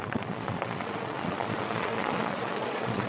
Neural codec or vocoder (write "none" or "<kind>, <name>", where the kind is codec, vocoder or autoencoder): vocoder, Vocos